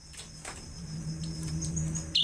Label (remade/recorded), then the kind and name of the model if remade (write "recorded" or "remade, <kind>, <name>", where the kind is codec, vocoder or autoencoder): recorded